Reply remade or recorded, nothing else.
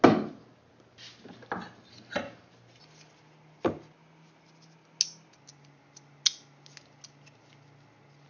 recorded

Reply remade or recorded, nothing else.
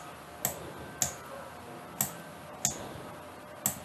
recorded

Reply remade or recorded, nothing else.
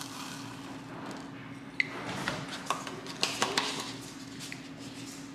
recorded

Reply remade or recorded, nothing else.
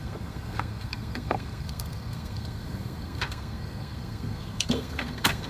remade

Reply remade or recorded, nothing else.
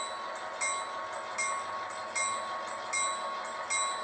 recorded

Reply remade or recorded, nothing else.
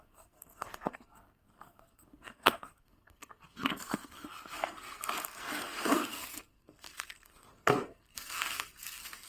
remade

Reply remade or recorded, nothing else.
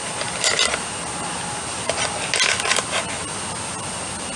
recorded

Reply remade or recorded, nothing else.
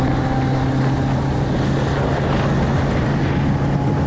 recorded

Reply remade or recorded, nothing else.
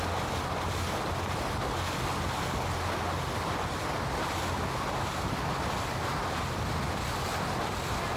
recorded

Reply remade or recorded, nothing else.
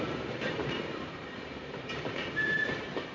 remade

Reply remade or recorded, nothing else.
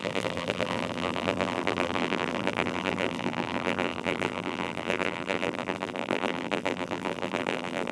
remade